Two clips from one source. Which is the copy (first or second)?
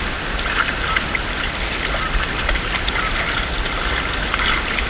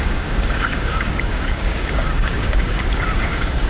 second